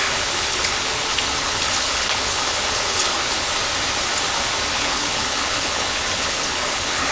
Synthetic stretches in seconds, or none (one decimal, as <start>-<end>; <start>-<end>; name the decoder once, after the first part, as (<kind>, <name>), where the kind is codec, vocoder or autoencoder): 0.0-3.5 (codec, HILCodec); 4.7-7.1